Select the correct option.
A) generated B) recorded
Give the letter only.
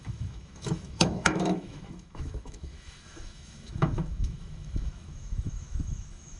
A